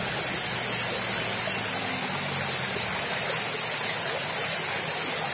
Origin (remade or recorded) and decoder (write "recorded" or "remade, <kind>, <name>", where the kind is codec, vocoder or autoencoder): recorded